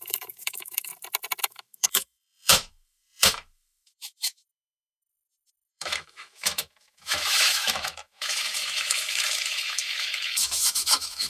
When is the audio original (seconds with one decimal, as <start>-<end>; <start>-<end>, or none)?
0.9-1.4